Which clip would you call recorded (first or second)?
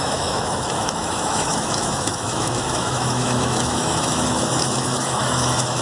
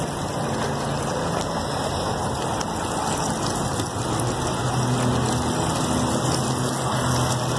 second